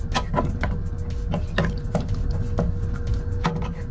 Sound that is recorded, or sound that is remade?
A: recorded